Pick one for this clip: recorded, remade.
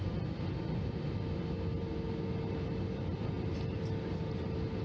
recorded